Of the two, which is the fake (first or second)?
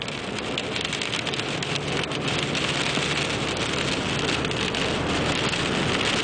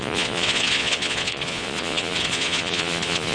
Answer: second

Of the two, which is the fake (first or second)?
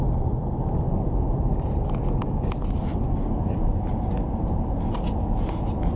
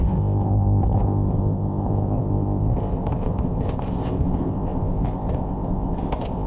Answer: second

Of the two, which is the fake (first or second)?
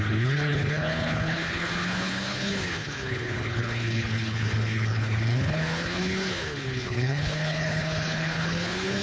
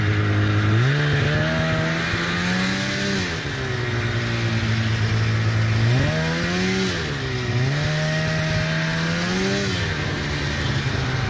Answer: first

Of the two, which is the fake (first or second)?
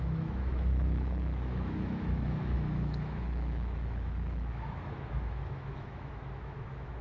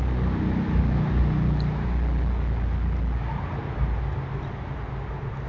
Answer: first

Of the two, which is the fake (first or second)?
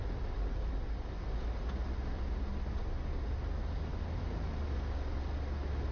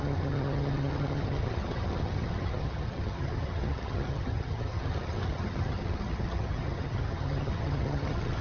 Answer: second